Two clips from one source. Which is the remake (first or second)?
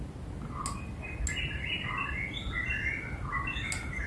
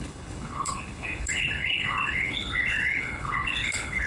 second